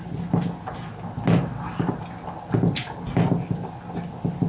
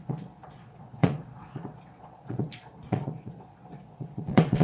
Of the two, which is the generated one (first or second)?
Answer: second